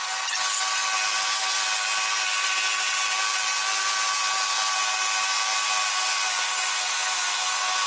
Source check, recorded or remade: recorded